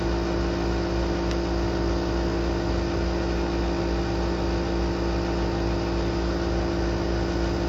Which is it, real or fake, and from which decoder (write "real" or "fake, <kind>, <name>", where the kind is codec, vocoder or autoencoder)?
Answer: real